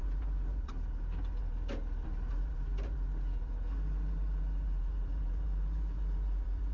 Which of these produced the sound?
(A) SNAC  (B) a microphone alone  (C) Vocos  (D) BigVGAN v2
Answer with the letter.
D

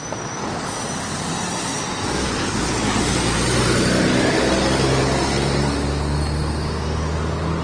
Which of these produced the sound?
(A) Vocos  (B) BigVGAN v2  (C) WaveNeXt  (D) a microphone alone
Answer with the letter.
D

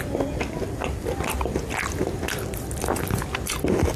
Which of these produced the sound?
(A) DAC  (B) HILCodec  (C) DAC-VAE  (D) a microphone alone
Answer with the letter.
D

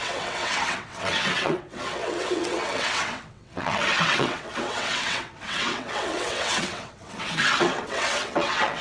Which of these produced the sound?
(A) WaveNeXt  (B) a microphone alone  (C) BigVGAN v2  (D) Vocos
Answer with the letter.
A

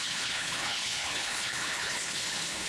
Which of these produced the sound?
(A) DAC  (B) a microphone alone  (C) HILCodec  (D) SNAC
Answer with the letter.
C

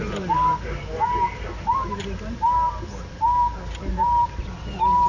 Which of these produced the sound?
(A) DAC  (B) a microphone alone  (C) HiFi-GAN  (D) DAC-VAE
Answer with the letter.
B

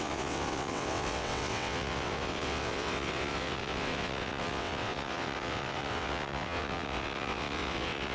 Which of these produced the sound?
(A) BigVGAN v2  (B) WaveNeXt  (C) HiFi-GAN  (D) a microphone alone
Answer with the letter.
B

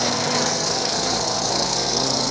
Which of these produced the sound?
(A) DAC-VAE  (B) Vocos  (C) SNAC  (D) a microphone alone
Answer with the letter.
C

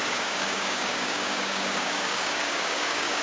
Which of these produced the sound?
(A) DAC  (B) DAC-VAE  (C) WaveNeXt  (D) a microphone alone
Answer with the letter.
A